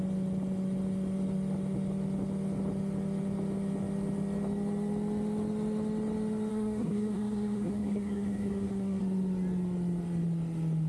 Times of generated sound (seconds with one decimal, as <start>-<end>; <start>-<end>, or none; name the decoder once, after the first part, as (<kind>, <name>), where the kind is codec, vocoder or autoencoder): 6.5-9.0 (codec, SNAC)